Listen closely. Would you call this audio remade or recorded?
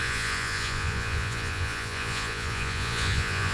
remade